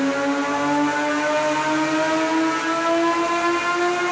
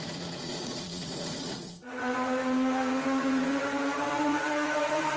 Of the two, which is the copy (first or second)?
second